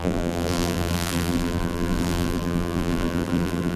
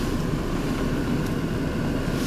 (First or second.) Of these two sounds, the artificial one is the first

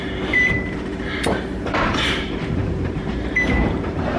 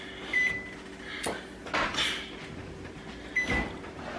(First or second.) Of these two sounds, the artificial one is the first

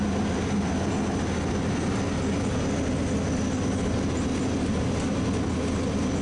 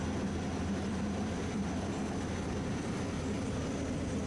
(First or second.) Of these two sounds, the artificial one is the second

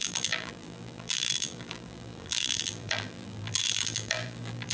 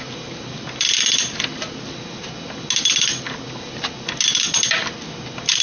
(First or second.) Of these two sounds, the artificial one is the first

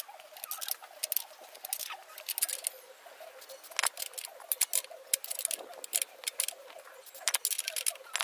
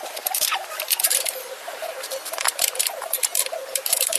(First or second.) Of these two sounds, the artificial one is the second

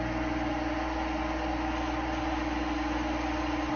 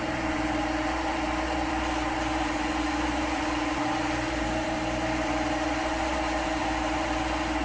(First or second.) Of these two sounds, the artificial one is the second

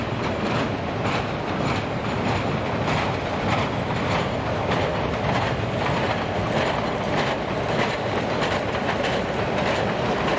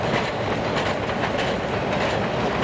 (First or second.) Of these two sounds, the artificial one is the first